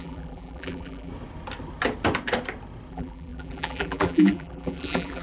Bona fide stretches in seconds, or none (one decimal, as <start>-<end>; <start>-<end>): 1.1-2.9